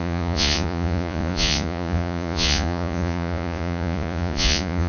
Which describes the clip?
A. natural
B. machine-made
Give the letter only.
B